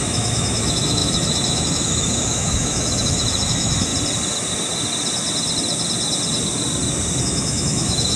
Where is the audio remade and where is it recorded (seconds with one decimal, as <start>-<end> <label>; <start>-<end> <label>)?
0.0-3.9 remade; 3.9-7.2 recorded; 7.2-8.2 remade